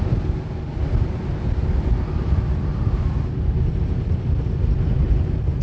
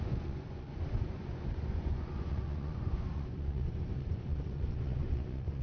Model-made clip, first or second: second